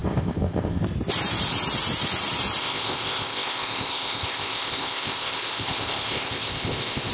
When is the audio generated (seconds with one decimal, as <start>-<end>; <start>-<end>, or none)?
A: 0.0-0.8; 2.6-7.1